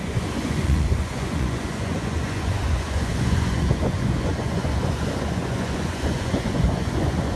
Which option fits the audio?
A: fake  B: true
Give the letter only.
A